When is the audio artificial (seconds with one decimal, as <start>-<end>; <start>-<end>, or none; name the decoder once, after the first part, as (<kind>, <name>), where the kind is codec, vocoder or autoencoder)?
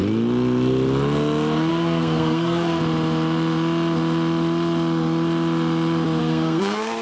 1.7-2.8 (codec, SNAC); 6.2-7.0